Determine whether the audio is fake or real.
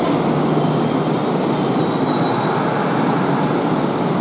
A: real